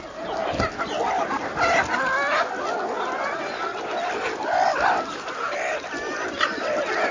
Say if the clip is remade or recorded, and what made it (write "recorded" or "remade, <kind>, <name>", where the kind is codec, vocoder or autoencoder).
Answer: recorded